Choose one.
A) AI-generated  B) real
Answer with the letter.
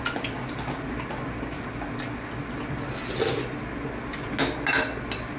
B